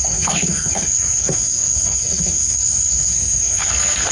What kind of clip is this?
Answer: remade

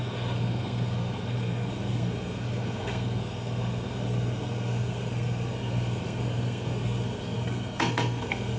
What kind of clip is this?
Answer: remade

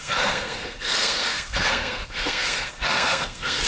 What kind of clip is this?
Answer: remade